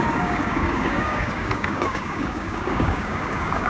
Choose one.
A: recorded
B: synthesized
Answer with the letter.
B